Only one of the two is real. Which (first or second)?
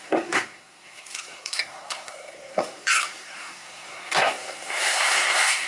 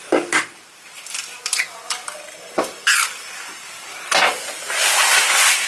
second